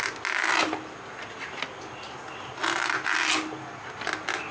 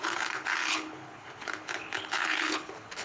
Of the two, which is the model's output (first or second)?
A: second